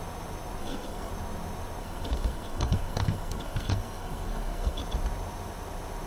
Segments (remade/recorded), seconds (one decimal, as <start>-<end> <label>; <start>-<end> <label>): 0.0-0.6 recorded; 0.6-1.1 remade; 1.1-1.8 recorded; 1.8-4.8 remade; 4.8-6.1 recorded